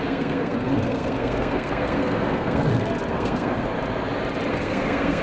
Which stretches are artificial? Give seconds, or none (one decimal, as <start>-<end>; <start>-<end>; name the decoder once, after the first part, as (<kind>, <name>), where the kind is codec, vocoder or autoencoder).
0.0-3.7 (codec, SNAC); 4.5-5.2